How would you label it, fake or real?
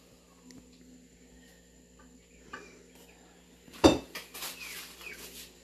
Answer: real